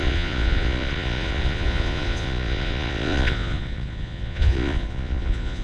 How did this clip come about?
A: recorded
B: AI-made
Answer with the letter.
B